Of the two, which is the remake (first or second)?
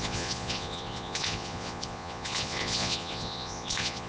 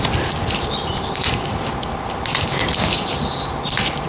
first